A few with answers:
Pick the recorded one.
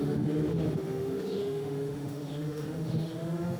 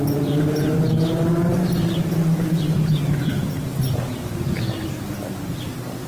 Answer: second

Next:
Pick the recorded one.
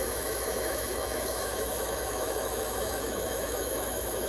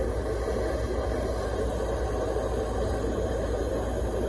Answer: second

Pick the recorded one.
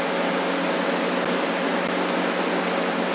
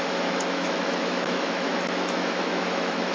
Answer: first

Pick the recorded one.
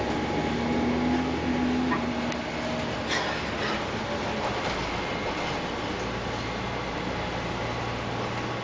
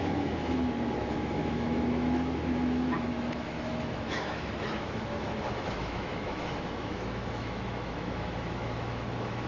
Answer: first